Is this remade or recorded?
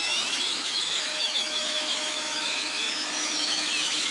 remade